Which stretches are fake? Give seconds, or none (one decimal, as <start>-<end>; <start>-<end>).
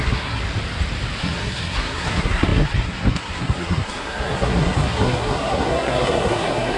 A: 0.0-0.4; 1.2-6.8